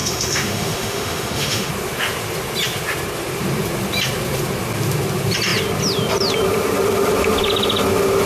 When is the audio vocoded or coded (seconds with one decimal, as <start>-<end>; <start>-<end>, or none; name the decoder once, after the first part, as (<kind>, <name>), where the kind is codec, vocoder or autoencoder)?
0.0-1.7 (autoencoder, DAC-VAE)